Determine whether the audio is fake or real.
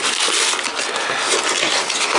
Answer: real